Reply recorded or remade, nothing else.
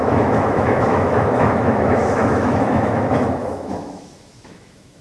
remade